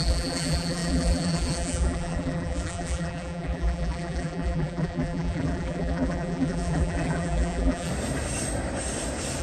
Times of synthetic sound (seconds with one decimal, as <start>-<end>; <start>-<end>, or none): 0.0-7.9